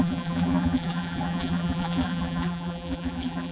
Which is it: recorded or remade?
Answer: remade